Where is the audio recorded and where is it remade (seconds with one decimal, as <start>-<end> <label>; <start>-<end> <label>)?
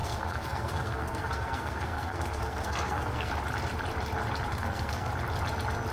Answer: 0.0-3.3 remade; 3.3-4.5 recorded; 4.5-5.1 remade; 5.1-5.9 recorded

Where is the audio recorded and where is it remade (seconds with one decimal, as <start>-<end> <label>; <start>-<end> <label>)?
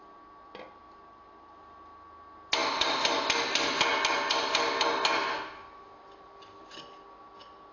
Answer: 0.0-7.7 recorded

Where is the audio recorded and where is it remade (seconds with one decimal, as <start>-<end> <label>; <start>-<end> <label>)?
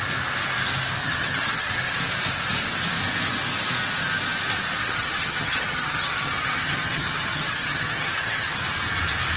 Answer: 0.0-1.0 recorded; 1.0-1.7 remade; 1.7-4.8 recorded; 4.8-8.6 remade; 8.6-9.4 recorded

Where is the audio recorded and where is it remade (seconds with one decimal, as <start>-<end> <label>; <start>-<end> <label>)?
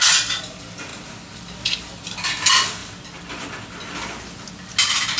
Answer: 0.0-5.2 recorded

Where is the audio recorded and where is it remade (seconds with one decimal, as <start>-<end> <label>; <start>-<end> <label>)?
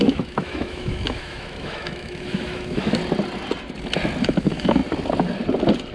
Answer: 0.0-3.0 remade; 3.0-4.2 recorded; 4.2-4.8 remade; 4.8-5.9 recorded